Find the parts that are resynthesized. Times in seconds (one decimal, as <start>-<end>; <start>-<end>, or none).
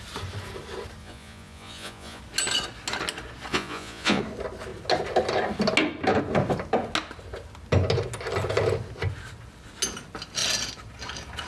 1.0-2.2; 3.5-4.2